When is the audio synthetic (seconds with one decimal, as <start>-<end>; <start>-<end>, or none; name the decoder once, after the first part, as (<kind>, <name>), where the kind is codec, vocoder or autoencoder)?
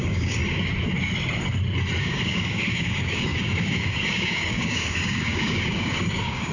0.0-0.4 (codec, DAC); 2.0-6.5